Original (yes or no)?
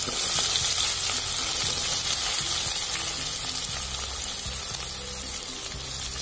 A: yes